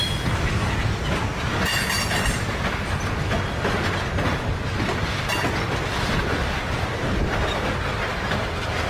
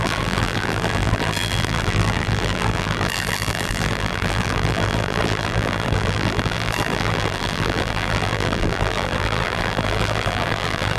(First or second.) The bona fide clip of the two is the first